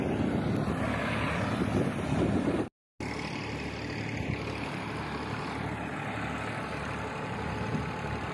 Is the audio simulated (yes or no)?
no